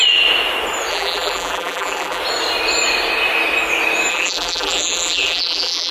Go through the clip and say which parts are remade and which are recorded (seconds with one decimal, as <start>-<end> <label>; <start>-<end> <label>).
0.0-0.9 recorded; 0.9-2.2 remade; 2.2-4.1 recorded; 4.1-5.9 remade